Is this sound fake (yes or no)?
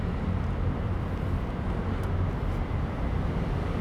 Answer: no